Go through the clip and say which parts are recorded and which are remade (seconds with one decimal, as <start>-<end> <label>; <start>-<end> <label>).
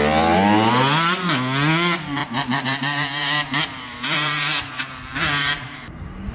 0.0-2.2 recorded; 2.2-6.3 remade